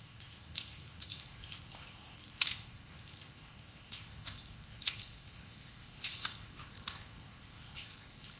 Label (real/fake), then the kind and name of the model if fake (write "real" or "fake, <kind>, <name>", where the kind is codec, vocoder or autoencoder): fake, codec, ZipCodec